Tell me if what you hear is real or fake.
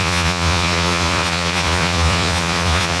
fake